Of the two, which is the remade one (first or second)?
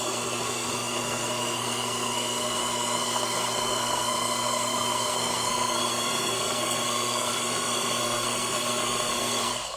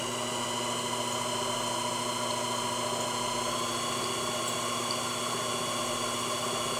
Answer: first